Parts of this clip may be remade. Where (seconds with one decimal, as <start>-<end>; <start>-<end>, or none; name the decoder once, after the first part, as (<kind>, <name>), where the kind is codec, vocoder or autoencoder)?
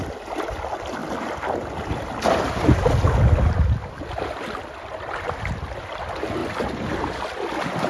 none